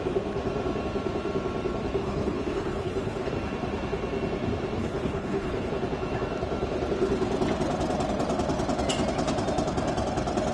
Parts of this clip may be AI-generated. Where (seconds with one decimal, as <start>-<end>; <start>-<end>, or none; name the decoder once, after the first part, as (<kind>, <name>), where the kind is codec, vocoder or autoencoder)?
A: 2.0-3.3 (codec, HILCodec); 4.8-5.7